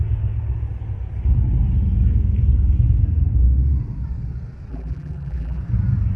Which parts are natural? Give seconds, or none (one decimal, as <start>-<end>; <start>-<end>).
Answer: 0.0-4.7; 5.6-6.2

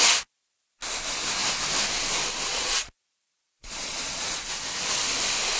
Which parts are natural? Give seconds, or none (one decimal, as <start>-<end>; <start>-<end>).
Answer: 0.0-2.5; 4.5-5.6

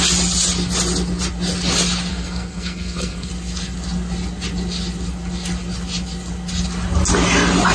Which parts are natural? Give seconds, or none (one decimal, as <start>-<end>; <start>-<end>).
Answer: 0.0-2.1; 3.3-7.7

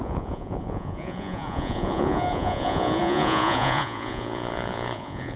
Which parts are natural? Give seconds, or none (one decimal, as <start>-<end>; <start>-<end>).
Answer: none

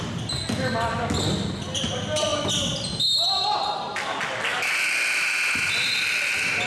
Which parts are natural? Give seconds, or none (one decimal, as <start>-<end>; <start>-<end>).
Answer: 0.0-6.7